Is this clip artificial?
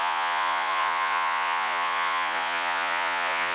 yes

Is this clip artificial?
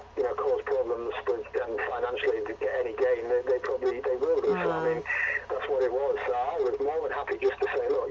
no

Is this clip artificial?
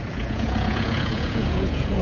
yes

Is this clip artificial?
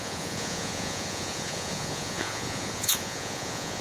yes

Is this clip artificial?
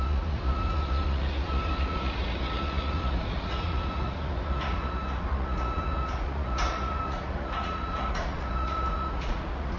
yes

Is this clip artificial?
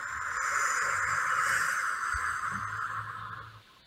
no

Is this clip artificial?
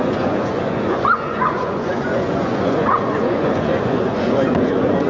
yes